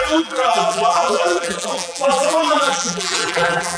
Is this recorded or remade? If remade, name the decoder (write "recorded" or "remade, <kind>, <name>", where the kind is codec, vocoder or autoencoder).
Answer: remade, vocoder, BigVGAN v2